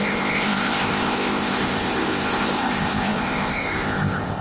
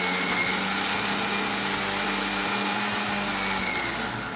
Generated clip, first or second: first